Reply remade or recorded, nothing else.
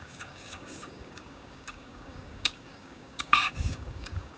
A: remade